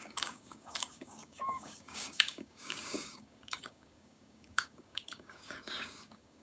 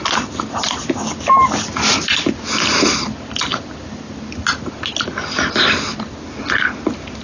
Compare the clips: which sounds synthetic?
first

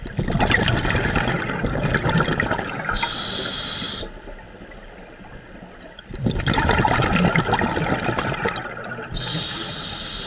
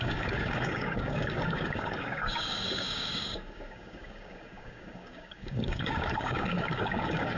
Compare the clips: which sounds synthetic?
second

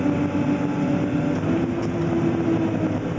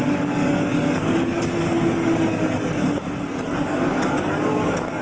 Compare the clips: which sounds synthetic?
second